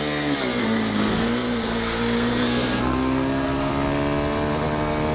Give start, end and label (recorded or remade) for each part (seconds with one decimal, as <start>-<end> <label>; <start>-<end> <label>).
0.0-0.6 recorded; 0.6-3.7 remade; 3.7-5.1 recorded